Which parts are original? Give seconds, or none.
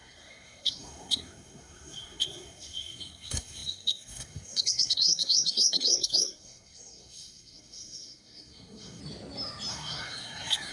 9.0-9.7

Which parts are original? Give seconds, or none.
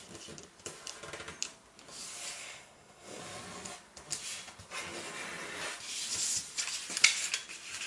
0.0-2.4; 3.2-7.9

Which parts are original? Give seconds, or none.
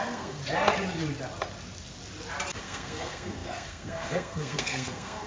0.4-2.6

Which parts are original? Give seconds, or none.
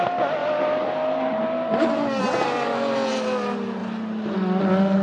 0.0-5.0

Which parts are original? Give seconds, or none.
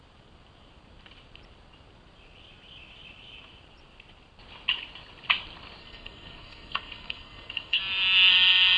0.0-5.8; 7.8-8.8